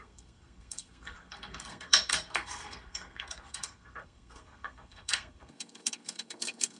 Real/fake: fake